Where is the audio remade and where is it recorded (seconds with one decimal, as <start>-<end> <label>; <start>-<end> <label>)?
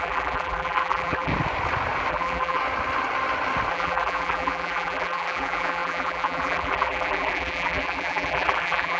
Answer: 0.0-1.3 remade; 1.3-2.1 recorded; 2.1-2.6 remade; 2.6-3.7 recorded; 3.7-9.0 remade